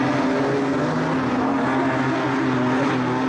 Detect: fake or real real